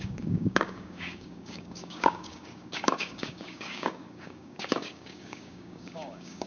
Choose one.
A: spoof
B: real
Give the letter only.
A